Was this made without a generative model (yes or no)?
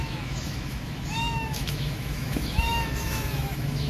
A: no